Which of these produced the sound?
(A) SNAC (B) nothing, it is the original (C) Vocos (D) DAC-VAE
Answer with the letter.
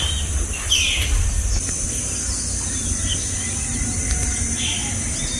B